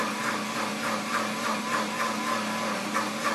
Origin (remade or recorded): recorded